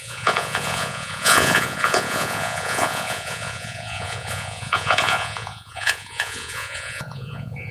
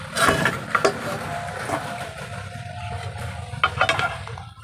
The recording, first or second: second